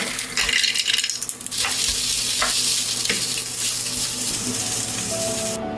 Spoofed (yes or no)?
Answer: no